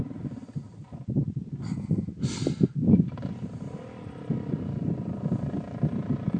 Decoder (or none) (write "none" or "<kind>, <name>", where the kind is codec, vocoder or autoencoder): none